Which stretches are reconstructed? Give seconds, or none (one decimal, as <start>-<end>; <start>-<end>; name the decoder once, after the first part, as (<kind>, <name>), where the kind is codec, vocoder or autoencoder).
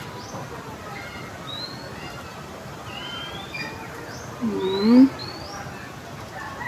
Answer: none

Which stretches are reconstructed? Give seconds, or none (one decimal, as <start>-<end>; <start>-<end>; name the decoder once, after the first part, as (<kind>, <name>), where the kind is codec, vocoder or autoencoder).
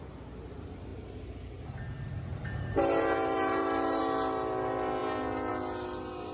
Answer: 2.3-4.0 (vocoder, BigVGAN v2)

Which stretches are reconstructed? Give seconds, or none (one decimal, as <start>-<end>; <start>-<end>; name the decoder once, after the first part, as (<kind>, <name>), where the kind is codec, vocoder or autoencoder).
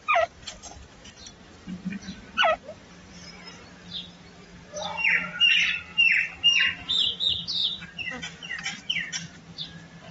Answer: 1.3-3.3 (vocoder, BigVGAN v2); 5.9-7.1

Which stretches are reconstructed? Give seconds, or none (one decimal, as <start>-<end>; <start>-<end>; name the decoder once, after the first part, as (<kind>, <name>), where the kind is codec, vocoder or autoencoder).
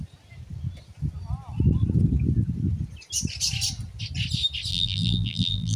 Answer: 4.7-5.8 (vocoder, BigVGAN v2)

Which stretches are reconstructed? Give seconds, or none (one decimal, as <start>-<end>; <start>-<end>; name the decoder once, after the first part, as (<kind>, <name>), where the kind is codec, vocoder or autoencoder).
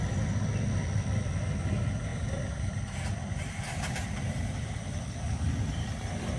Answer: 2.1-5.0 (vocoder, BigVGAN v2)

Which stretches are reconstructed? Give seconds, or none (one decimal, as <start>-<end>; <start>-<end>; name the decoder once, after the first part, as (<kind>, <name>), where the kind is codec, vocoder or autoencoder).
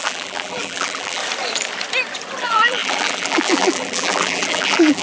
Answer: 0.0-1.2 (vocoder, BigVGAN v2); 2.4-5.0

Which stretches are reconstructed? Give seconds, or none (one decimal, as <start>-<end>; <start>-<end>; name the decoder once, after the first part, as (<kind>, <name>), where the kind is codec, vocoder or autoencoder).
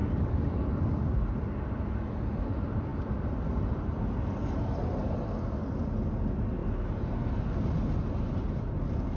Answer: 0.0-0.8 (vocoder, BigVGAN v2)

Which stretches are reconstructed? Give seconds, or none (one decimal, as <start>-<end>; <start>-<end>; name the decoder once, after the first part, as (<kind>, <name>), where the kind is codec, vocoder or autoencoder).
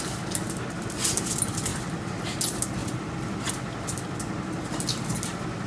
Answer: 1.7-2.4 (vocoder, BigVGAN v2)